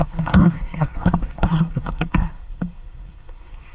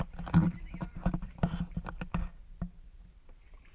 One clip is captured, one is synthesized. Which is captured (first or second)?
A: second